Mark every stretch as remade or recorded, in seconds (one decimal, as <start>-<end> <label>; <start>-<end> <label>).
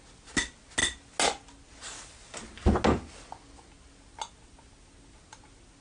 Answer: 0.0-5.8 recorded